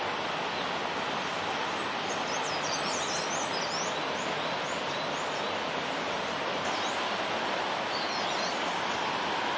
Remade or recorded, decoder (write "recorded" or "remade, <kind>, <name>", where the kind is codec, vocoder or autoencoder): recorded